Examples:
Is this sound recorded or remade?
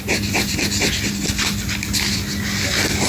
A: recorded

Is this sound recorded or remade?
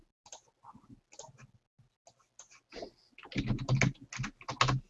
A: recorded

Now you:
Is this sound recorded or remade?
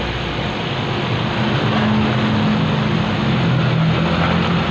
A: recorded